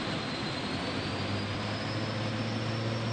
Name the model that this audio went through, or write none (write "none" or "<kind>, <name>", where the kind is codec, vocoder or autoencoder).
none